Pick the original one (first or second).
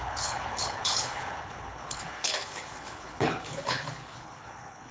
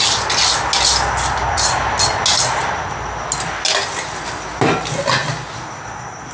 second